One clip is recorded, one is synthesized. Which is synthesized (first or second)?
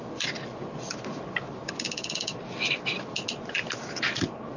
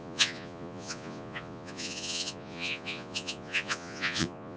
second